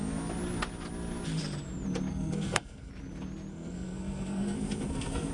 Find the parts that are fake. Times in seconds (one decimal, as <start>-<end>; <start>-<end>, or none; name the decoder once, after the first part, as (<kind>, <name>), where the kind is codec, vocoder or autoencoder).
2.1-2.9 (codec, SNAC); 3.5-5.3